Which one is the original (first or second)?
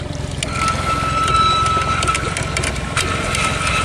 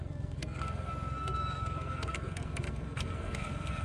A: first